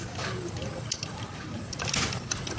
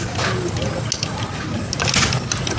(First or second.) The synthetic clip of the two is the first